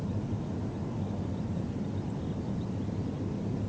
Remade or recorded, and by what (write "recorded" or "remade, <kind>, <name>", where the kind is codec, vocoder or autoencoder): recorded